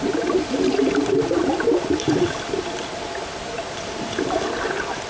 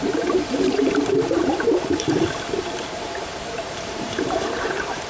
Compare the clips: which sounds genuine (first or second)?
first